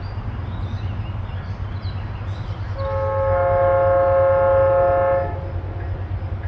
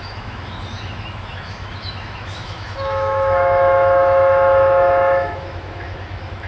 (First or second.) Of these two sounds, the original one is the first